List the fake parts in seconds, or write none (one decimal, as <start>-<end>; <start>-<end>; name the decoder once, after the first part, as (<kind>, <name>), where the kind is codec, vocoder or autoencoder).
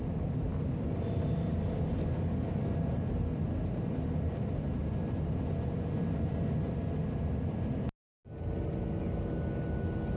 none